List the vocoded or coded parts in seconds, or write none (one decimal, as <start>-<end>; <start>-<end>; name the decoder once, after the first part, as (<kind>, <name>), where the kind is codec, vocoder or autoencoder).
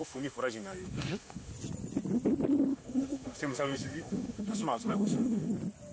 0.0-1.5 (autoencoder, DAC-VAE); 2.7-5.5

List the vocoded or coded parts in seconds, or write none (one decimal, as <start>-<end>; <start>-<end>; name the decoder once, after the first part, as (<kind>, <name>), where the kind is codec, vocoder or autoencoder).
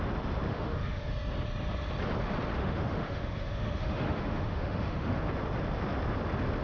0.5-1.1 (autoencoder, DAC-VAE); 2.6-5.2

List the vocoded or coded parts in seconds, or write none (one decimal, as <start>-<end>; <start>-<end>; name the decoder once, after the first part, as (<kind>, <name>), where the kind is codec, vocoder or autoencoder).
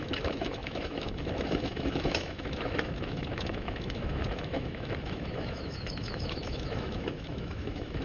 0.0-8.0 (autoencoder, DAC-VAE)